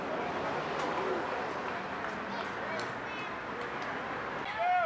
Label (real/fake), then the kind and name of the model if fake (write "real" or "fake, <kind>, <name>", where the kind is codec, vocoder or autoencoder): real